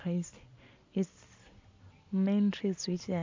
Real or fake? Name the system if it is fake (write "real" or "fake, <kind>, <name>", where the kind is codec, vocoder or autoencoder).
real